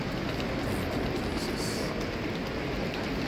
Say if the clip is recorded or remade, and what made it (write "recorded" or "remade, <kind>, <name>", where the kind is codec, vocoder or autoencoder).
recorded